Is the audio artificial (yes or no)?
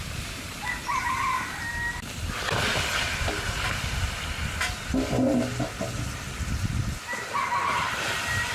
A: no